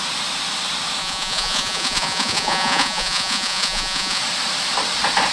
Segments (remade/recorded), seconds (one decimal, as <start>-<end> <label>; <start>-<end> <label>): 0.0-1.0 recorded; 1.0-4.2 remade; 4.2-5.3 recorded